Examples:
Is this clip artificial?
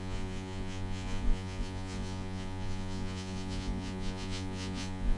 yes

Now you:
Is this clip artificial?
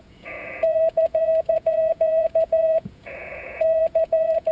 yes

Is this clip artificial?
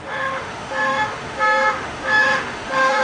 yes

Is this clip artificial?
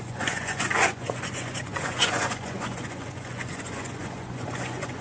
yes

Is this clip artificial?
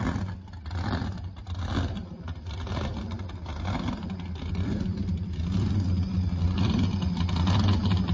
no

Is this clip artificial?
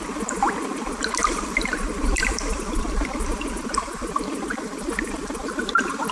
yes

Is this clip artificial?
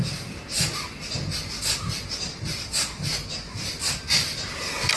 no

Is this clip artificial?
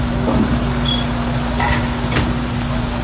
no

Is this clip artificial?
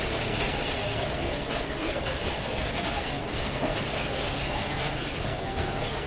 yes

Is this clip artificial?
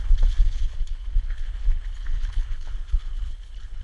yes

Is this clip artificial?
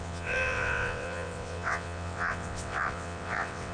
yes